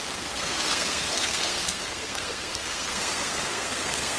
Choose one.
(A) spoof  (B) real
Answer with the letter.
A